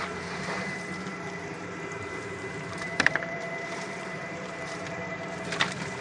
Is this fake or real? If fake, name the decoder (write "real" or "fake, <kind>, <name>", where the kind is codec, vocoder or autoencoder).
fake, vocoder, BigVGAN v2